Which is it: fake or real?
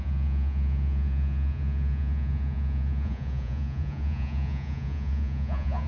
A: fake